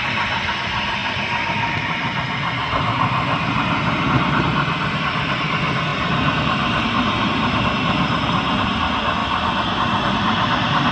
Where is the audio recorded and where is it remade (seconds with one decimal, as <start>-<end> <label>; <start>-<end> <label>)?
0.0-5.9 recorded; 5.9-7.6 remade; 7.6-9.2 recorded; 9.2-10.9 remade